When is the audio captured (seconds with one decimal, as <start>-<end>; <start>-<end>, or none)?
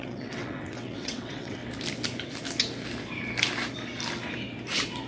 1.6-5.1